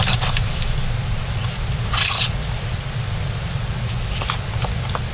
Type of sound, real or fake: fake